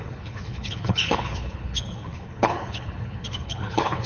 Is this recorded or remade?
remade